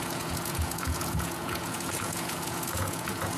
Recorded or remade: remade